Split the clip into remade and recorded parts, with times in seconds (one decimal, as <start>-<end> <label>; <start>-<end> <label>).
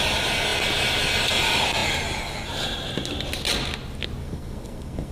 0.0-4.2 recorded; 4.2-5.1 remade